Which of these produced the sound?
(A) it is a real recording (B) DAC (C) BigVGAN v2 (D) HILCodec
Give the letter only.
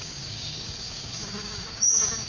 B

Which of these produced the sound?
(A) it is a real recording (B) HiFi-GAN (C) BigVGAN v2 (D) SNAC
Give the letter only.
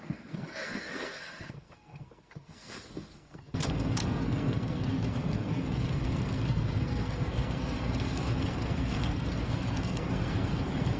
D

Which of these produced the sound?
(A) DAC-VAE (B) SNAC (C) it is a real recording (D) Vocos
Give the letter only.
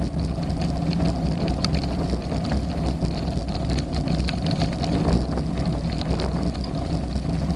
C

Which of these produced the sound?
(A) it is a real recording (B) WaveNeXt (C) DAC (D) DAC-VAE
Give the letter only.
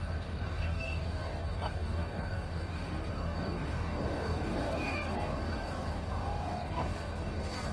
C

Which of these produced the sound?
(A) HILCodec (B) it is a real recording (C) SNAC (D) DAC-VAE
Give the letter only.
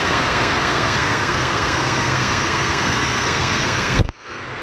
C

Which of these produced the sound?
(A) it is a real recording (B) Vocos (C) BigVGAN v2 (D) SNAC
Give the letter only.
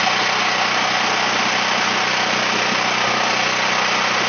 A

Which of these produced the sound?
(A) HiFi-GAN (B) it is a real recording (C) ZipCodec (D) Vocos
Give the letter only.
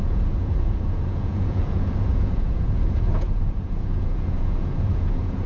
D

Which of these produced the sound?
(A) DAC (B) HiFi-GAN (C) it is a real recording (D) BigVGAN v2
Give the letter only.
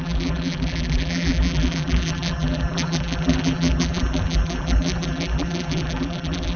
D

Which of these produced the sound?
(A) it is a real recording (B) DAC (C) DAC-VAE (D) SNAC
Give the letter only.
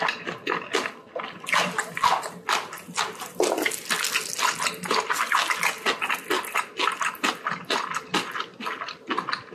A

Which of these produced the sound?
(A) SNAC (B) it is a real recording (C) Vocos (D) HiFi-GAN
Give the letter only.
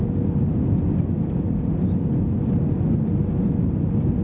B